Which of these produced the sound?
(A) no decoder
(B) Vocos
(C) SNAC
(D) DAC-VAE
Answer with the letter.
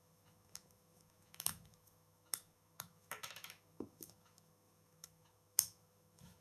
D